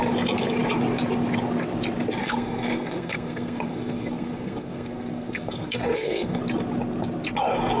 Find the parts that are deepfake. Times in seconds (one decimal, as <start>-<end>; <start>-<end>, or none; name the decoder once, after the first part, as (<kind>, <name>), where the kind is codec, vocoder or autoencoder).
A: 2.2-6.4 (codec, SNAC)